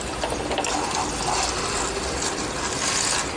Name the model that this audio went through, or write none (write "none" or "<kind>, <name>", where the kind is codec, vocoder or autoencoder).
none